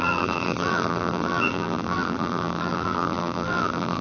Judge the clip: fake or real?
fake